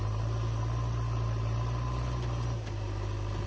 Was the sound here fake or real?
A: real